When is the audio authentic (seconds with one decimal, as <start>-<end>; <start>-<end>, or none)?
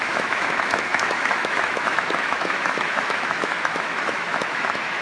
none